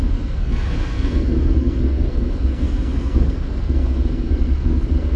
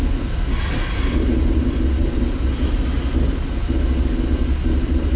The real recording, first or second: second